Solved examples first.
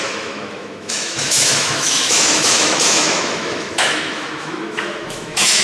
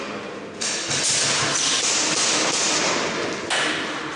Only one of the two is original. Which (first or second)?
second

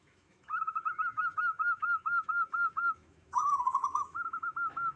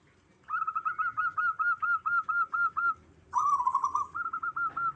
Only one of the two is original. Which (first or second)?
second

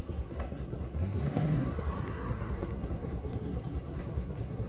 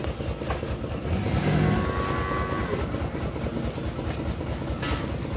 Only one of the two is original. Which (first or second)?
second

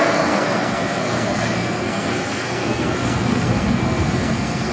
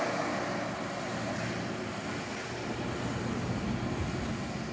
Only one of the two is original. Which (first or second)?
second